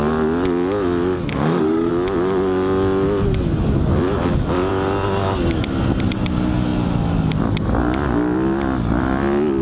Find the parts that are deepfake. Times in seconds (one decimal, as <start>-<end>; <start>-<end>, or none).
1.3-1.9

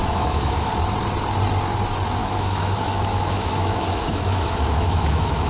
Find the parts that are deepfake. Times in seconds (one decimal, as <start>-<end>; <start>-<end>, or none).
0.0-0.7; 2.2-5.5